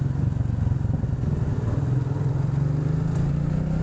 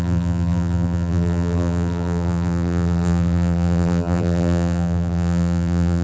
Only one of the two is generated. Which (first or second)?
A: second